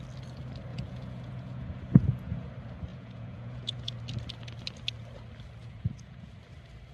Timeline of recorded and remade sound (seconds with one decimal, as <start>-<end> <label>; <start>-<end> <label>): 0.0-0.7 recorded; 0.7-2.5 remade; 2.5-2.9 recorded; 2.9-3.9 remade; 3.9-5.6 recorded; 5.6-6.3 remade; 6.3-6.9 recorded